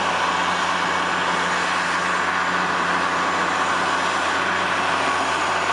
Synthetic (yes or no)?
no